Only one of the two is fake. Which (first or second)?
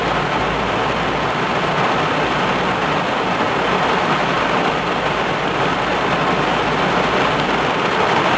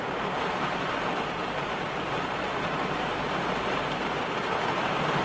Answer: second